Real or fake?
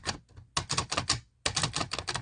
real